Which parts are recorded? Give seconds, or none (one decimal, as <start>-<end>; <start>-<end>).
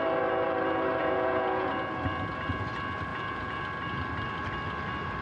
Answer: 0.0-1.0; 1.7-3.1; 3.6-5.2